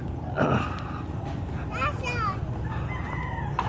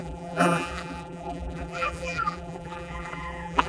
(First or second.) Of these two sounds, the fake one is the second